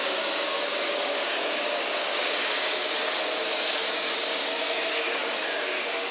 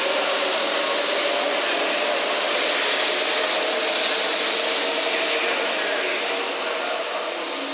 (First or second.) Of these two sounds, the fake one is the first